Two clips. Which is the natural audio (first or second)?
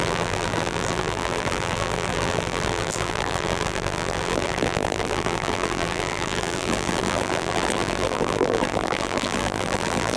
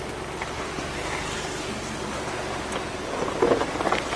second